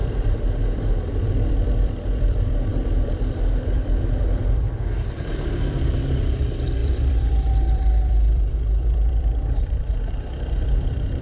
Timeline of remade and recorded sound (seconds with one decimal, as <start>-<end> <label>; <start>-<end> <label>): 0.0-11.2 remade